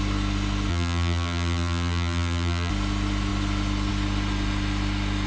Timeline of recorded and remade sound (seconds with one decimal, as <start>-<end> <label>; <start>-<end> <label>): 0.0-0.7 recorded; 0.7-2.7 remade; 2.7-5.3 recorded